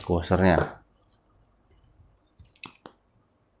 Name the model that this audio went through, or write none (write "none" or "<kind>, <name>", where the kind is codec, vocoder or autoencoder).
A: none